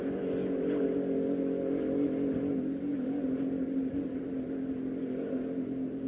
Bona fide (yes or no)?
yes